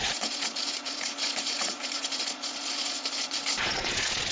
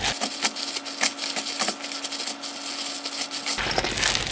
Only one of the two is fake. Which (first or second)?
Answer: first